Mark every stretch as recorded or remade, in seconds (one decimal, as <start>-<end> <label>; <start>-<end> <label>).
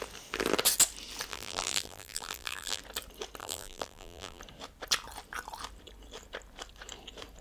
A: 0.0-1.3 recorded; 1.3-2.8 remade; 2.8-3.4 recorded; 3.4-4.4 remade; 4.4-7.4 recorded